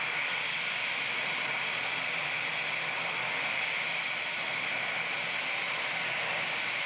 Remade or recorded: recorded